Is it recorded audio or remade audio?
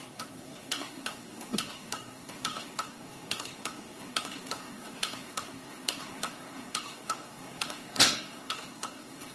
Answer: remade